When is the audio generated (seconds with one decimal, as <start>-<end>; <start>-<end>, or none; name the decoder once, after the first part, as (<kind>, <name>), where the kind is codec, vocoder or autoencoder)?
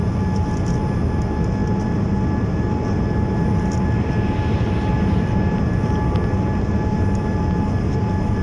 none